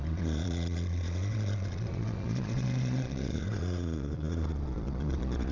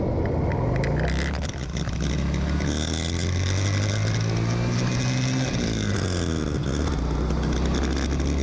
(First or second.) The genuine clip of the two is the second